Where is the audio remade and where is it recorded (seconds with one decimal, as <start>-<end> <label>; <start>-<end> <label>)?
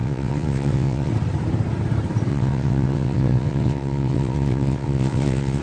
0.0-1.1 remade; 1.1-2.3 recorded; 2.3-5.6 remade